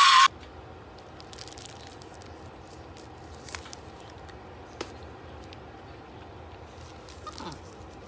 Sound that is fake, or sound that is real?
real